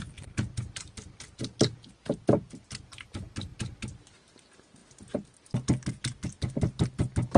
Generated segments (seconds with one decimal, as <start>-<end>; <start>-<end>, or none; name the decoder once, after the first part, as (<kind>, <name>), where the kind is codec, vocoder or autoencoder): none